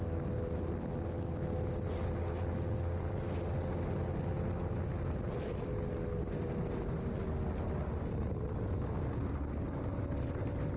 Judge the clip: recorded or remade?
recorded